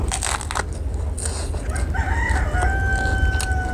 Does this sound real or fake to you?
real